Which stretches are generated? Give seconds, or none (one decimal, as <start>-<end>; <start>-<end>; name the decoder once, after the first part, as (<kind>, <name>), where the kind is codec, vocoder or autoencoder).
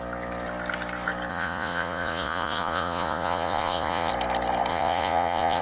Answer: 1.3-4.1 (vocoder, Vocos); 4.7-5.6